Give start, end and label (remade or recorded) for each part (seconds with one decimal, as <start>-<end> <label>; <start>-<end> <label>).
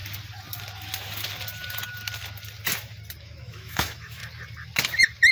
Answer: 0.0-3.2 recorded; 3.2-4.2 remade; 4.2-5.3 recorded